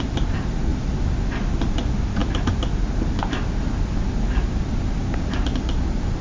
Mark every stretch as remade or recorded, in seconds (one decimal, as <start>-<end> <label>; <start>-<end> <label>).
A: 0.0-0.7 remade; 0.7-1.6 recorded; 1.6-2.2 remade; 2.2-6.2 recorded